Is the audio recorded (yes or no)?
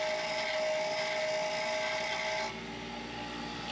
yes